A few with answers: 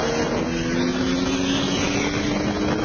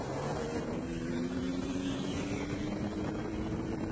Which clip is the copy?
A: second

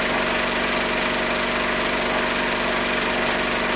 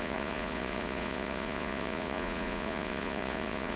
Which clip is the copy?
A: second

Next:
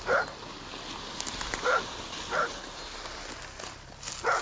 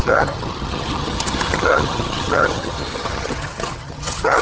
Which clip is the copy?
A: second